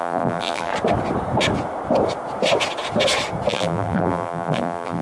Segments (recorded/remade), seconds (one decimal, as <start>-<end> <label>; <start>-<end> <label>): 0.0-0.7 remade; 0.7-3.5 recorded; 3.5-5.0 remade